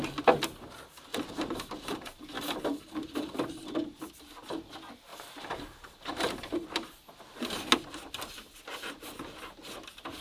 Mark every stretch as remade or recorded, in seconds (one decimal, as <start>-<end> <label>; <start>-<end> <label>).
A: 0.0-1.1 recorded; 1.1-4.1 remade; 4.1-5.1 recorded; 5.1-6.9 remade; 6.9-10.2 recorded